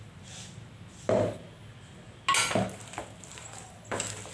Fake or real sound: real